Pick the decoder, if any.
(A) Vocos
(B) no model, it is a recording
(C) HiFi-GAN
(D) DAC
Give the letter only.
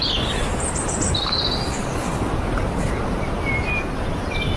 B